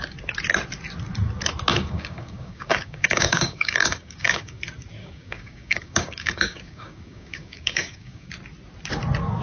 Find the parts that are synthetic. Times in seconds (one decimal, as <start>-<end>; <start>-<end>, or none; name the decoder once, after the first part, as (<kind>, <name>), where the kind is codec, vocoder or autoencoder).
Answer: 1.7-4.6 (codec, DAC); 5.0-8.3